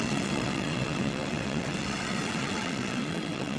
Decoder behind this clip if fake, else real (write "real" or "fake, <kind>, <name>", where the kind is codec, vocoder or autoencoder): fake, vocoder, WaveNeXt